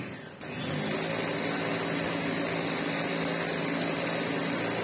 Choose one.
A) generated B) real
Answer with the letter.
B